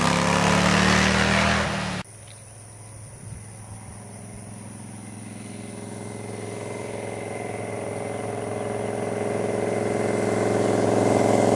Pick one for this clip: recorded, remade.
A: recorded